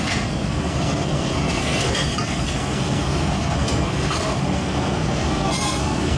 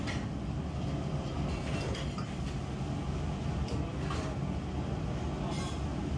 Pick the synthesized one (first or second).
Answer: first